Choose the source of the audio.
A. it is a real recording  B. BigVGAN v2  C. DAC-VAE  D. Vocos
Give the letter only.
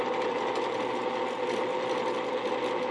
A